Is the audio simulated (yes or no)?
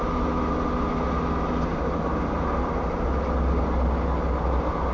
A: no